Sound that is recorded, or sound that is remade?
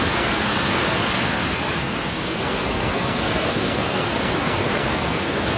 remade